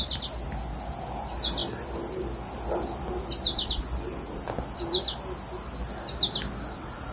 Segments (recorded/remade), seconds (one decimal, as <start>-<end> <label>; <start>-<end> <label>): 0.0-7.1 recorded